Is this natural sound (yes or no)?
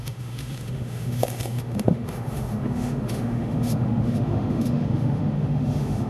no